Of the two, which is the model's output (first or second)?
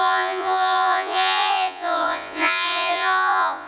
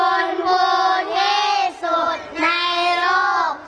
first